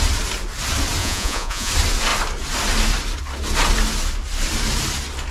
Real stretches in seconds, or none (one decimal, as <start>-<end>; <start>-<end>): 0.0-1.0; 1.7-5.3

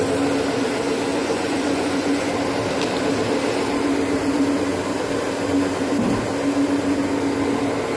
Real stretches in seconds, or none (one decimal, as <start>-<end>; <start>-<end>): 0.0-1.1; 2.3-8.0

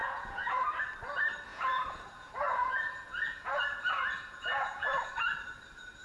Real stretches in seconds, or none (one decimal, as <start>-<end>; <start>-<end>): 0.6-1.5; 5.1-6.0

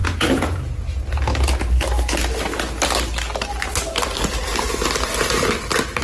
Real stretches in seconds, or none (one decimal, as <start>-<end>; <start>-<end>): 1.0-6.0

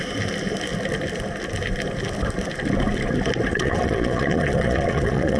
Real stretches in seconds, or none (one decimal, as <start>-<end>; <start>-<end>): 0.0-3.5

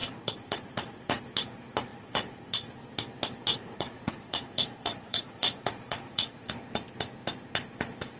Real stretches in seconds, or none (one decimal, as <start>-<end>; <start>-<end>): 1.2-1.9; 2.5-3.5; 6.5-8.2